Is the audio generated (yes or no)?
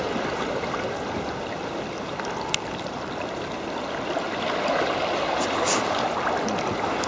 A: no